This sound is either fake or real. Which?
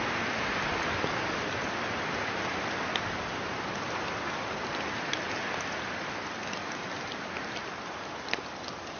real